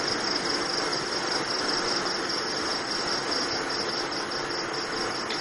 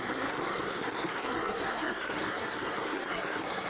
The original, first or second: first